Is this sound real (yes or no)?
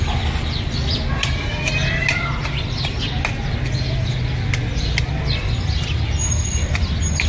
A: yes